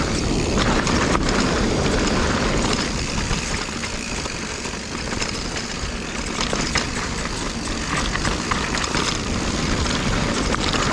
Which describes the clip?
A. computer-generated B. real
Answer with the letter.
A